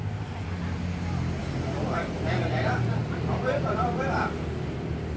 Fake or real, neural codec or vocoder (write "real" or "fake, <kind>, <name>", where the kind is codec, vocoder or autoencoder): real